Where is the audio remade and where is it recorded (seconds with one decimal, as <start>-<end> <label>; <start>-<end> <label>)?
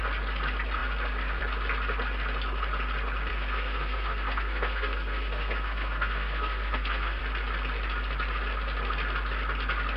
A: 0.0-3.3 recorded; 3.3-7.2 remade; 7.2-10.0 recorded